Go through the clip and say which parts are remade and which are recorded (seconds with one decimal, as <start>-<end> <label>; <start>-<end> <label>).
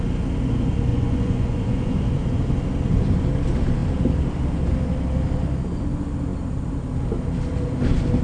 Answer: 0.0-0.9 recorded; 0.9-2.4 remade; 2.4-8.2 recorded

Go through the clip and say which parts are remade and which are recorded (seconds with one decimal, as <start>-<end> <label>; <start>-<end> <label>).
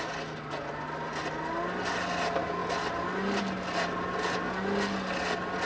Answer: 0.0-5.7 recorded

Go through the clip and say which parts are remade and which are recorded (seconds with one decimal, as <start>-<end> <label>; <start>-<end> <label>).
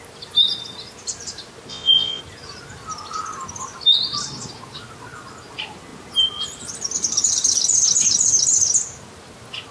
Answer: 0.0-1.7 recorded; 1.7-2.2 remade; 2.2-9.7 recorded